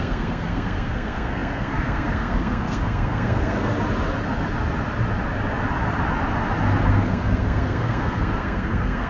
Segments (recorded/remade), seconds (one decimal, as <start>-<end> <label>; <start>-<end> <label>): 0.0-3.7 remade; 3.7-6.9 recorded; 6.9-9.1 remade

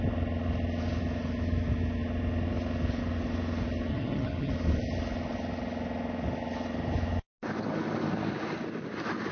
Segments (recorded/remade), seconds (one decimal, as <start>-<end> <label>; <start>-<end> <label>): 0.0-3.9 recorded; 3.9-4.5 remade; 4.5-9.3 recorded

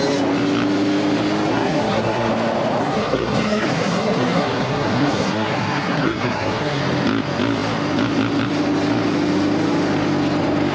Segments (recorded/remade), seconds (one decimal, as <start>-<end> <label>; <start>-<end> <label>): 0.0-1.5 recorded; 1.5-2.3 remade; 2.3-2.8 recorded; 2.8-6.8 remade; 6.8-10.7 recorded

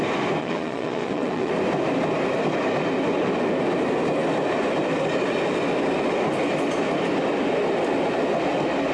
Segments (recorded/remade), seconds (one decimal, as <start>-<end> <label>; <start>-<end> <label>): 0.0-0.4 recorded; 0.4-1.5 remade; 1.5-8.9 recorded

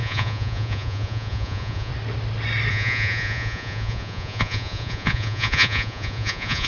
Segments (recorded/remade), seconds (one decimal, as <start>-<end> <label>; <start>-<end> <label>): 0.0-1.9 remade; 1.9-2.7 recorded; 2.7-6.7 remade

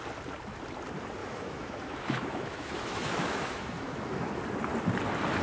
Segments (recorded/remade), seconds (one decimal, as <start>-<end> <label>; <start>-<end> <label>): 0.0-1.2 recorded; 1.2-4.4 remade; 4.4-5.4 recorded

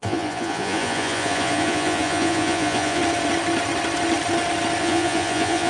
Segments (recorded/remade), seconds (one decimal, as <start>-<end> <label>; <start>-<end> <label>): 0.0-3.0 remade; 3.0-4.8 recorded; 4.8-5.7 remade